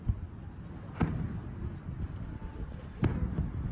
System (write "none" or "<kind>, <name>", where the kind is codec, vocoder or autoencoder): none